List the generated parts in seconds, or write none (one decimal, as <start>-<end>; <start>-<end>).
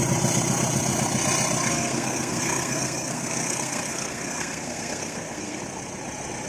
1.7-5.6